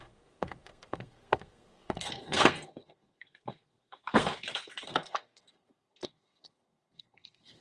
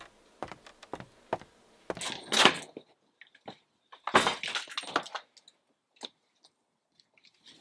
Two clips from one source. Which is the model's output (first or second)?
first